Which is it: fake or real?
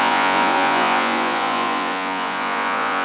fake